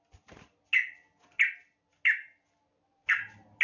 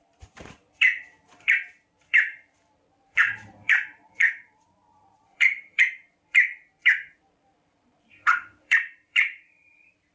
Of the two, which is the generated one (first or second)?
second